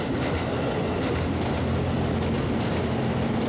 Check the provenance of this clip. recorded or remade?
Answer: recorded